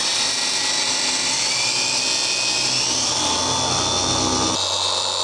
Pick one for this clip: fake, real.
real